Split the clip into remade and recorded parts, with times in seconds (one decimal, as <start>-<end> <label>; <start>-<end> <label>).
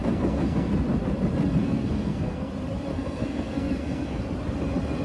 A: 0.0-0.7 remade; 0.7-1.6 recorded; 1.6-2.5 remade; 2.5-2.9 recorded; 2.9-4.2 remade; 4.2-5.0 recorded